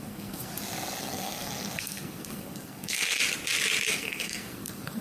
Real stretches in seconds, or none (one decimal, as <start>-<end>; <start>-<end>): 0.5-1.0; 3.2-3.9

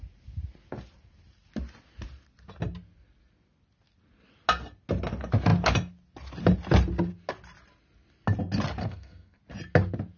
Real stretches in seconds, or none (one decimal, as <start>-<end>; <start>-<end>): 0.0-8.8; 9.4-10.2

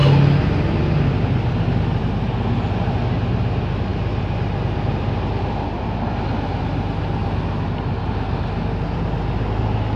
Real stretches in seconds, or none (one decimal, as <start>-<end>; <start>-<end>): 0.0-10.0

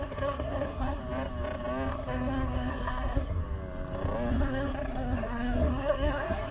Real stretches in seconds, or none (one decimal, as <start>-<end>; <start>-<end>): 1.0-1.9; 3.4-4.3

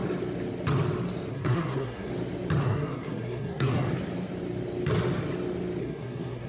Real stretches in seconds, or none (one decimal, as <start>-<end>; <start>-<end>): 0.0-1.3; 2.1-2.6; 3.9-5.8

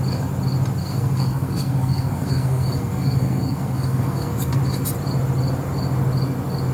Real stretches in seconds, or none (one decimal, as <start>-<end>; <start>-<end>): 0.0-0.8; 4.6-6.7

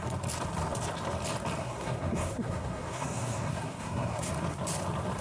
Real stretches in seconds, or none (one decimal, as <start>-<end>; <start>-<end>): 0.0-1.6; 4.3-5.2

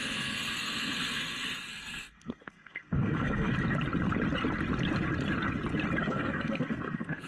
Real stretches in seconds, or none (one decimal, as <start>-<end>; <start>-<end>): 3.5-6.0